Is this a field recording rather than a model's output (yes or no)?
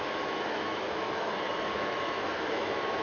no